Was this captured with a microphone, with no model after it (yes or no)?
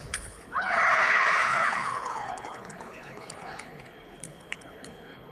no